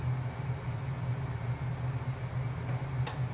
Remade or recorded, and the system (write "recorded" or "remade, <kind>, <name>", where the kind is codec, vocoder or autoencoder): recorded